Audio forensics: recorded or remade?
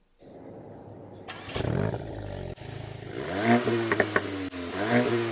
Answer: recorded